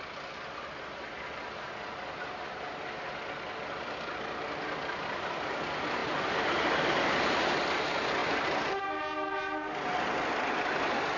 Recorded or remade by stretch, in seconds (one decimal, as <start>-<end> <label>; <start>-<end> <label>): 0.0-6.0 recorded; 6.0-7.5 remade; 7.5-8.2 recorded; 8.2-8.8 remade; 8.8-11.2 recorded